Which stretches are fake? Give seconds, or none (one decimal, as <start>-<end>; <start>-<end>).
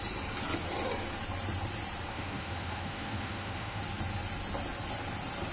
2.1-3.8